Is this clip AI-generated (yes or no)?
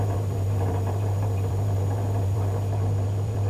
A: yes